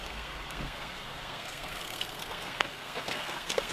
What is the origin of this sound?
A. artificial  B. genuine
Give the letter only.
A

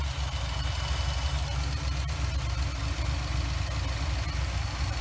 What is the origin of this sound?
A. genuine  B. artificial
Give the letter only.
A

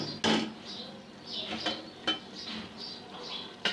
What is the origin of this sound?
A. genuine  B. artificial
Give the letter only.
A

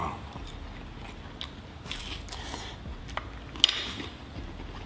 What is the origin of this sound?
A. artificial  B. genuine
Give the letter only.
B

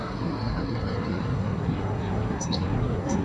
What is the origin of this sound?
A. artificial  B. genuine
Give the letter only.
A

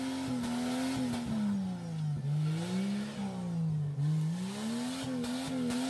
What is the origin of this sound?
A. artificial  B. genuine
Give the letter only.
B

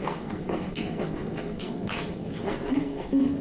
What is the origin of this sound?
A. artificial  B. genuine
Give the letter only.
A